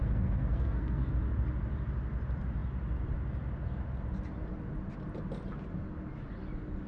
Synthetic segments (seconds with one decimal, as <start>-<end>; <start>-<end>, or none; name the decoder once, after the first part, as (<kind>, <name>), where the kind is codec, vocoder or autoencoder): 0.0-1.1 (codec, SNAC)